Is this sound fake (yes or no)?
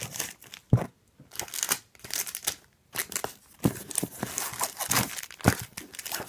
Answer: no